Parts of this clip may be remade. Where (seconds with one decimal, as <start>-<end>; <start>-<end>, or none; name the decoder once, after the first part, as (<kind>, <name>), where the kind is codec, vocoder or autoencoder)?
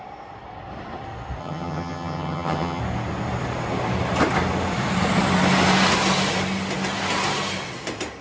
1.4-2.8 (vocoder, HiFi-GAN)